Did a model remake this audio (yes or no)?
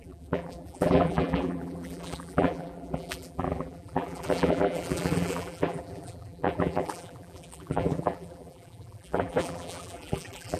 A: yes